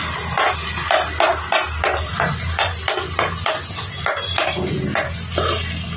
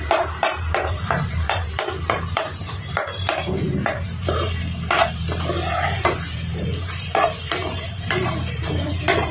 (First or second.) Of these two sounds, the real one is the first